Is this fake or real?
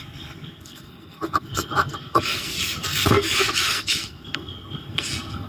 fake